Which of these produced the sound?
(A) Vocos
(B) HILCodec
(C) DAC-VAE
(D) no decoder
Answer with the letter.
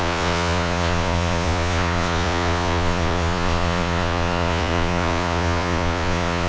A